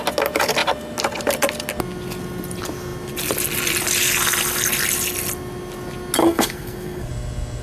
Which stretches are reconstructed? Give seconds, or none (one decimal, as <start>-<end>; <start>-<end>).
6.2-7.1